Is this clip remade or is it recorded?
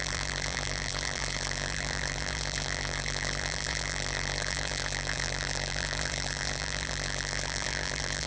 remade